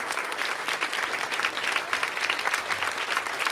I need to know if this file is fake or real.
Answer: real